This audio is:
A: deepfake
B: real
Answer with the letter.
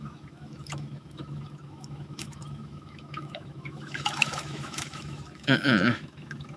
A